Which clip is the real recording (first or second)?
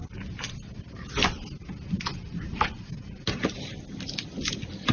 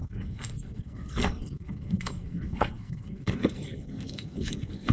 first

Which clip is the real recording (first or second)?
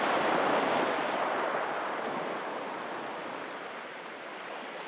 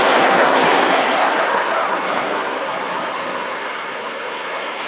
first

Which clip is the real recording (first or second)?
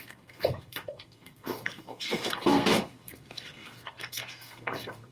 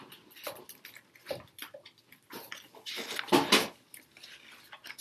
second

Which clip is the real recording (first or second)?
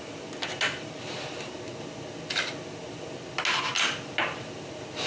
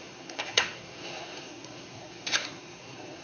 first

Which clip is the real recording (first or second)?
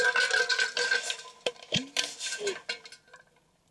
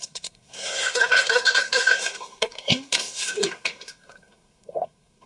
first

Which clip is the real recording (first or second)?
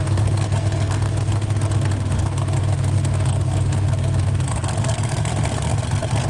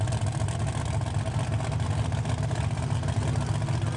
second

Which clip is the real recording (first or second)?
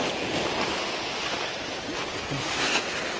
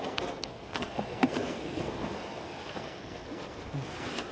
first